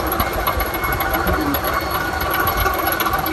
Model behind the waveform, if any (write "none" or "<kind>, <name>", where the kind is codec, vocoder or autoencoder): none